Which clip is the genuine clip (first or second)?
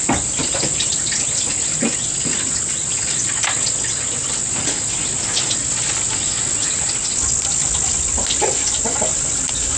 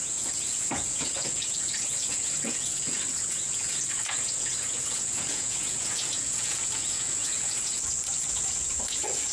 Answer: first